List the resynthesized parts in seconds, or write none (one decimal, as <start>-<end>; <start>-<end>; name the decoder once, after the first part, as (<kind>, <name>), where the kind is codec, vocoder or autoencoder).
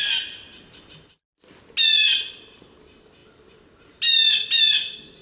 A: none